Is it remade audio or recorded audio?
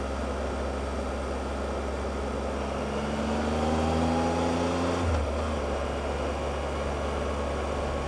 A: recorded